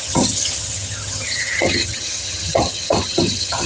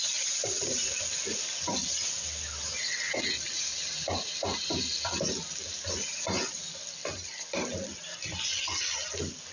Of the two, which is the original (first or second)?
second